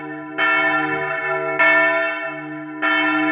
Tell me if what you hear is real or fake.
real